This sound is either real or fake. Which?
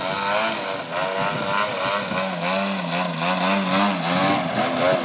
real